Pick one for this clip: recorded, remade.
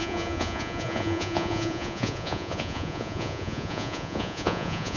remade